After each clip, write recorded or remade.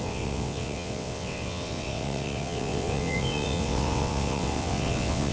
remade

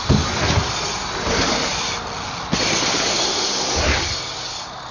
recorded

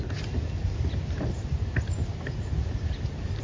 recorded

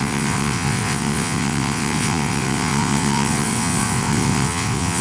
remade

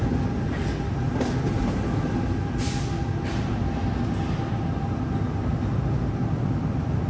recorded